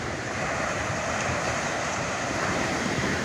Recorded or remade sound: remade